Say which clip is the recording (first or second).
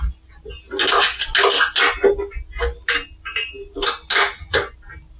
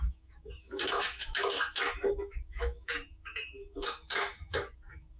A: first